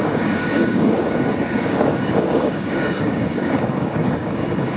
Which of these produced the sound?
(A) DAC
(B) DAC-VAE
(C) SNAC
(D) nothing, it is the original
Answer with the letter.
A